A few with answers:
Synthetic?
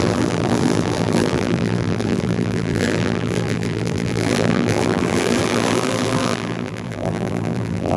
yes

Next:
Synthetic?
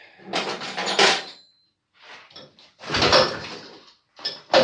yes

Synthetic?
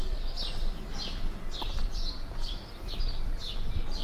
yes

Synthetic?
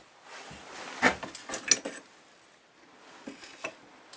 no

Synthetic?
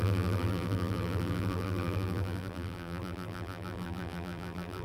yes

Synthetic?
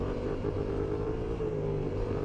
yes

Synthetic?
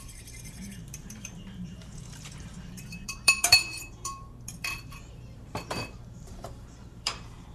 yes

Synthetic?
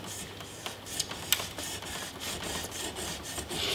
no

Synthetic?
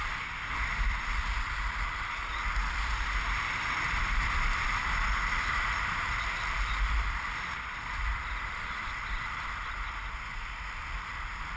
yes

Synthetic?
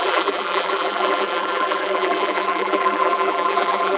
yes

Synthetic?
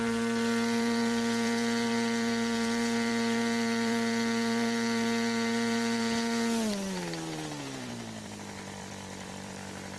yes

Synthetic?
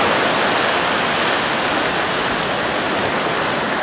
no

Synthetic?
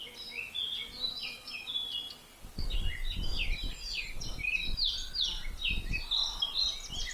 no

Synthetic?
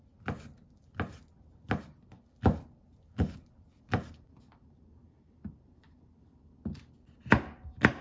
no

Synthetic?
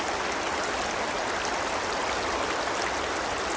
no